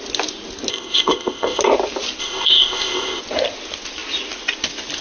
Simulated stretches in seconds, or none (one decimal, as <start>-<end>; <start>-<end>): 0.7-1.6; 2.2-3.2